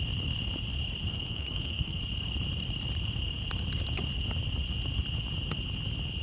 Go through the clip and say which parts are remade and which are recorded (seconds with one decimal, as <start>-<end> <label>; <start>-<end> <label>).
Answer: 0.0-1.1 recorded; 1.1-2.0 remade; 2.0-6.2 recorded